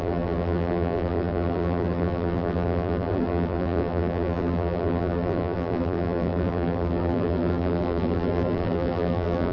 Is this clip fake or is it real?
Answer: fake